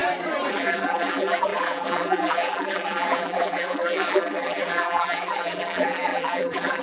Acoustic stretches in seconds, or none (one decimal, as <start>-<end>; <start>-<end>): 0.0-0.5